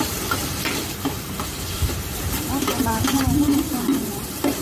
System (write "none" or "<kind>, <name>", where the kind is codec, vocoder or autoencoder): vocoder, BigVGAN v2